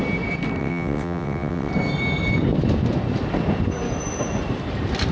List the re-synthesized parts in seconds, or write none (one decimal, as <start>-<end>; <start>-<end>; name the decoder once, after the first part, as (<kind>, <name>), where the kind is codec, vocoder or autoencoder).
0.6-1.7 (vocoder, WaveNeXt)